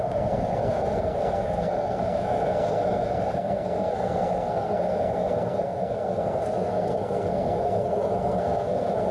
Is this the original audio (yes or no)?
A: no